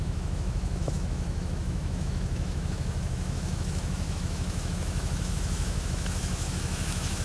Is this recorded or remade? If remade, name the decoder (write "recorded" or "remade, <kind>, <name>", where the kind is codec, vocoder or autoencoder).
remade, autoencoder, DAC-VAE